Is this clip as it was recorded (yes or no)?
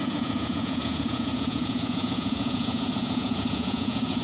no